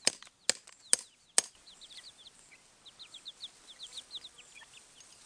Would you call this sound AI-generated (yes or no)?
no